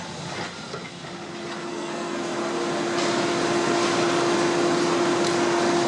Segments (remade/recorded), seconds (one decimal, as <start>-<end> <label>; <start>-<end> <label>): 0.0-1.7 recorded; 1.7-2.2 remade; 2.2-5.9 recorded